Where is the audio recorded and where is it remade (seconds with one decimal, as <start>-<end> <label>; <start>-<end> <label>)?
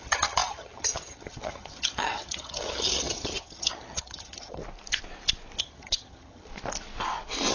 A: 0.0-4.6 remade; 4.6-5.6 recorded; 5.6-6.5 remade; 6.5-7.5 recorded